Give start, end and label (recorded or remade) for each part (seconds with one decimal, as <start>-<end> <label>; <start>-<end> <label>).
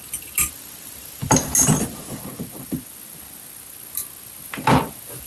0.0-5.3 recorded